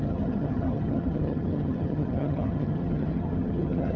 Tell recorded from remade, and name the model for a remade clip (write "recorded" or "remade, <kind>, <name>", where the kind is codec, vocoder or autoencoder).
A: remade, vocoder, HiFi-GAN